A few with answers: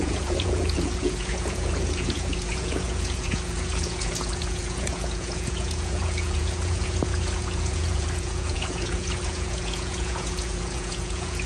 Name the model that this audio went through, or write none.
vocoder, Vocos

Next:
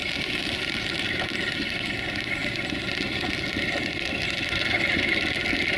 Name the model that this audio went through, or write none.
none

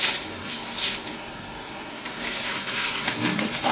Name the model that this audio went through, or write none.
codec, SNAC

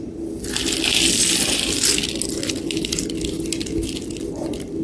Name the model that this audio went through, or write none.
none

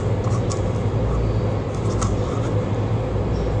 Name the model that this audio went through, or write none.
none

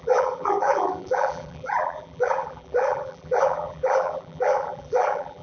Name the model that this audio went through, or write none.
vocoder, BigVGAN v2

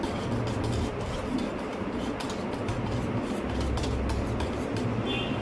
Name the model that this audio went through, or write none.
none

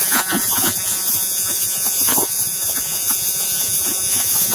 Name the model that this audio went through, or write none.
vocoder, Vocos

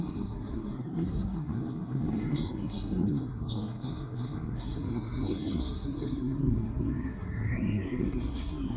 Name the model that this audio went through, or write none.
codec, SNAC